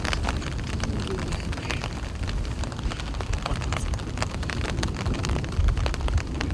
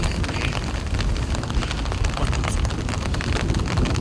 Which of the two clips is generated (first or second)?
first